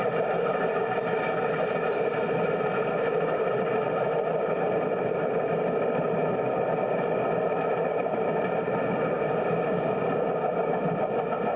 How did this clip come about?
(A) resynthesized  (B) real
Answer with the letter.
B